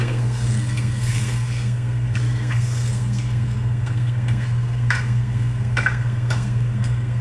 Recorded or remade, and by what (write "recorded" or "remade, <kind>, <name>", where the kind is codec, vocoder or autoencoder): remade, codec, SNAC